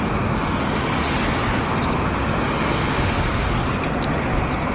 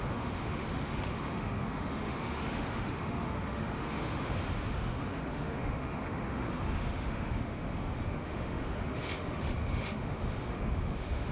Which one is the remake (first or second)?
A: second